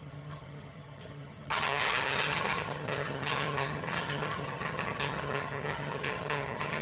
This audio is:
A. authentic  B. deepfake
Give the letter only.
B